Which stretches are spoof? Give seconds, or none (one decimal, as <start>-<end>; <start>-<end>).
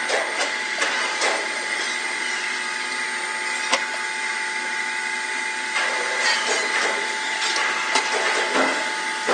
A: 0.4-1.9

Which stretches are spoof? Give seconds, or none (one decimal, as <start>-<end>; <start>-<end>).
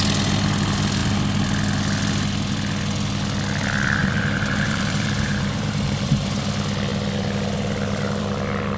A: 4.0-6.4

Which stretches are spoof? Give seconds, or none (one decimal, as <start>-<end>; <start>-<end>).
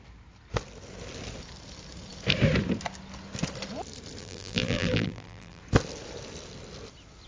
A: 4.2-5.6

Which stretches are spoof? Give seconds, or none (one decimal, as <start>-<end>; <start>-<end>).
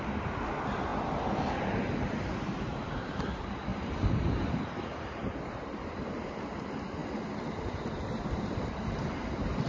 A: 0.0-0.9; 2.2-7.0; 7.5-9.7